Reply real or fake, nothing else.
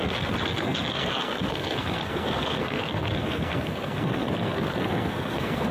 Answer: fake